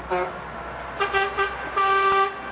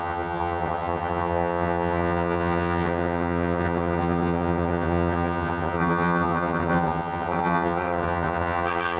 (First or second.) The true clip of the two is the first